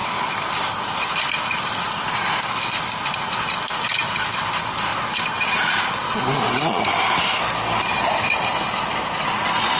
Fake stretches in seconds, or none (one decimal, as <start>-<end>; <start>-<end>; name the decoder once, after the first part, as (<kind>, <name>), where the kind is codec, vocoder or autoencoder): none